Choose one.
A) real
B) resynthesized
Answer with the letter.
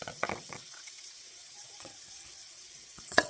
B